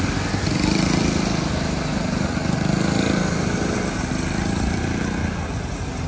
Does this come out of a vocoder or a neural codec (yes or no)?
no